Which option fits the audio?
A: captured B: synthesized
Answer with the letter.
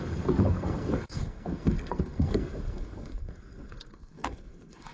B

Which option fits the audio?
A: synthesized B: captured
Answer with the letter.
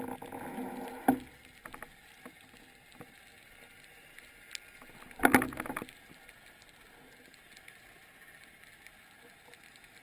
B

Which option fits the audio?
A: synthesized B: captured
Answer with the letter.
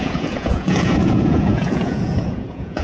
A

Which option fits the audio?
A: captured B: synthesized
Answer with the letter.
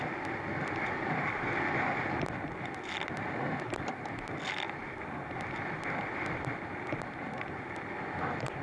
A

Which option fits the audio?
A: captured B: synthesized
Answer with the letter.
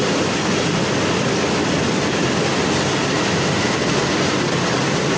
A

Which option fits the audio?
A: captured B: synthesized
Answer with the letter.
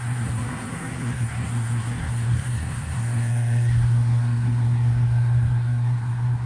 B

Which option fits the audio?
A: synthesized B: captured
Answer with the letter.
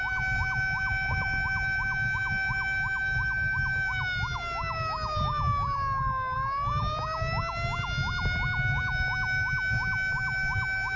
B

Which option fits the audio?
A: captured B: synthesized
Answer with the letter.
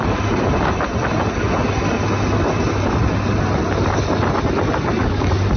A